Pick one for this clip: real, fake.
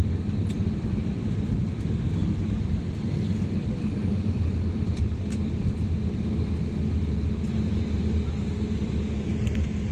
real